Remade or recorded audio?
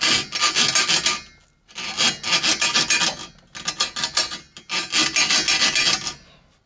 recorded